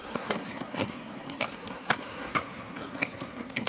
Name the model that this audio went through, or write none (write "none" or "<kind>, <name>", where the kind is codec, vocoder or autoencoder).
codec, SNAC